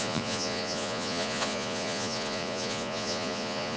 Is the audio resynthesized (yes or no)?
yes